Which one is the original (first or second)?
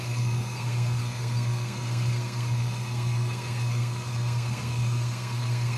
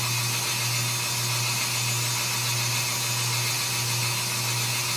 second